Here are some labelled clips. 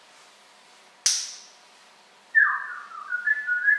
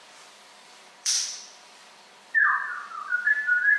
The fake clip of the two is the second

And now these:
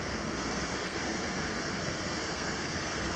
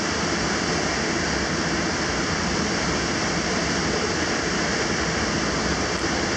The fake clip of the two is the first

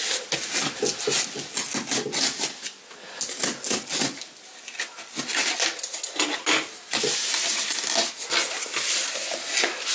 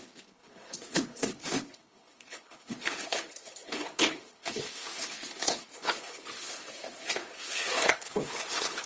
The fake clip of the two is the second